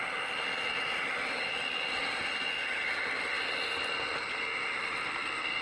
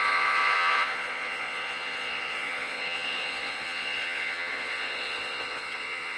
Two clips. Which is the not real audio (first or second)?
second